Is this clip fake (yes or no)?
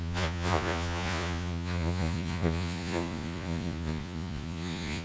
yes